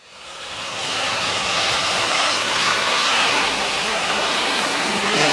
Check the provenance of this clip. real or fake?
fake